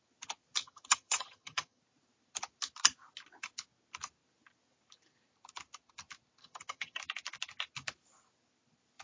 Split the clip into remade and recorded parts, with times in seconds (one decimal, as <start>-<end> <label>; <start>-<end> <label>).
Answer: 0.0-0.6 recorded; 0.6-1.8 remade; 1.8-6.4 recorded; 6.4-7.0 remade; 7.0-9.0 recorded

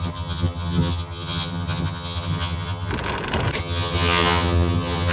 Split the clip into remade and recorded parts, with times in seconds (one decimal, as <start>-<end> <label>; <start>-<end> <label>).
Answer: 0.0-2.9 remade; 2.9-3.6 recorded; 3.6-5.1 remade

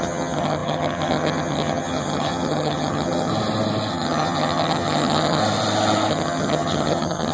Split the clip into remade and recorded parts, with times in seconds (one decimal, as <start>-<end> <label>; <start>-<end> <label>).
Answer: 0.0-3.3 remade; 3.3-3.9 recorded; 3.9-5.4 remade; 5.4-6.1 recorded; 6.1-7.3 remade

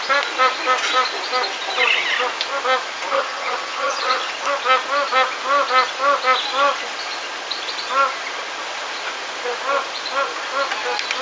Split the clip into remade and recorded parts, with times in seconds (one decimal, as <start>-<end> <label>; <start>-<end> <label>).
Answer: 0.0-3.1 recorded; 3.1-4.3 remade; 4.3-11.2 recorded

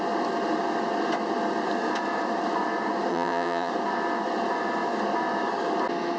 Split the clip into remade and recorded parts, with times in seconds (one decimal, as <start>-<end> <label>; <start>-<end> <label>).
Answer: 0.0-3.1 recorded; 3.1-3.7 remade; 3.7-6.2 recorded

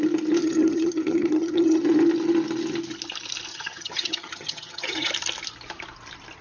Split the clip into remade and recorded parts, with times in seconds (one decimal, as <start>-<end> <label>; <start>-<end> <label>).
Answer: 0.0-0.4 recorded; 0.4-1.8 remade; 1.8-3.5 recorded; 3.5-5.1 remade; 5.1-6.4 recorded